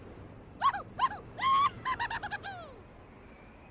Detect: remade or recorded recorded